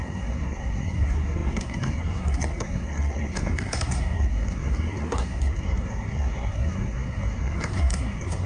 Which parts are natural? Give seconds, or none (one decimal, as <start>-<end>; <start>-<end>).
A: none